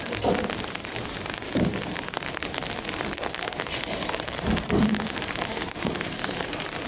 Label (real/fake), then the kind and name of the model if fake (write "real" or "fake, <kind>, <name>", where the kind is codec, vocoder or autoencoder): fake, vocoder, BigVGAN v2